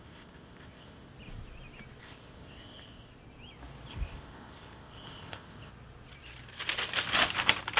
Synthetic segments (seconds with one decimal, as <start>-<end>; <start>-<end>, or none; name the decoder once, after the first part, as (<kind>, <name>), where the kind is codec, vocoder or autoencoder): 0.0-1.1 (codec, ZipCodec); 2.0-3.1; 3.9-5.7